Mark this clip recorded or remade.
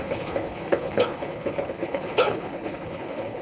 remade